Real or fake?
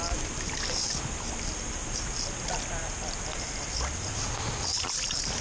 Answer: real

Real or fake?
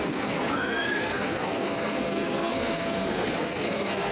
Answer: fake